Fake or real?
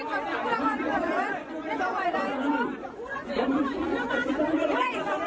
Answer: fake